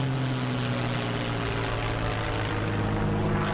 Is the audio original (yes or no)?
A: yes